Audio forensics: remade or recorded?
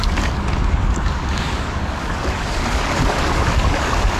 remade